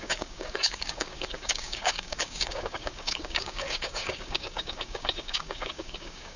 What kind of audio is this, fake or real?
fake